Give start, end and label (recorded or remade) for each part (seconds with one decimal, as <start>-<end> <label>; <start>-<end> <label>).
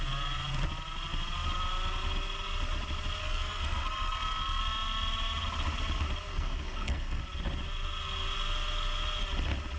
0.0-3.2 recorded; 3.2-4.6 remade; 4.6-6.3 recorded; 6.3-7.2 remade; 7.2-9.8 recorded